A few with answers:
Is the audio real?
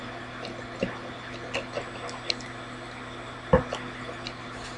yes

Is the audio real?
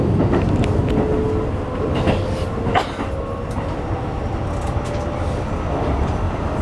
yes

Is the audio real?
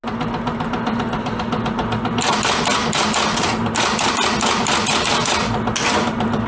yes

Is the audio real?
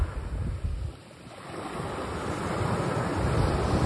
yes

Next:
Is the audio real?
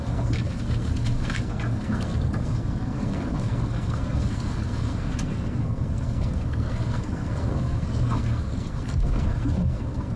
no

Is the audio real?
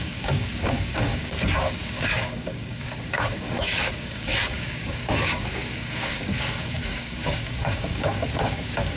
no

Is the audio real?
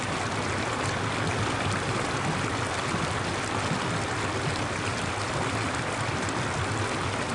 yes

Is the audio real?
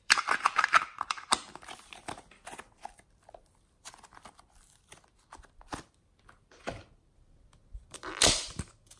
no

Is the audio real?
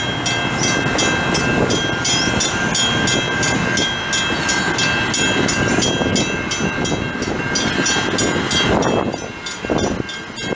yes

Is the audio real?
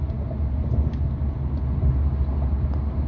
yes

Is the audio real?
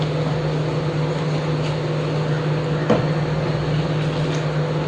yes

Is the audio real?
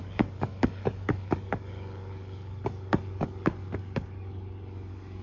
no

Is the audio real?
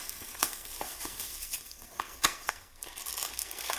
no